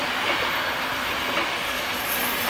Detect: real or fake real